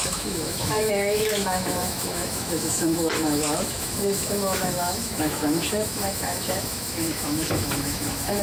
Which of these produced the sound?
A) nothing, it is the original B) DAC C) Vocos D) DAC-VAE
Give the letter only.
D